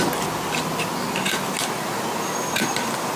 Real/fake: real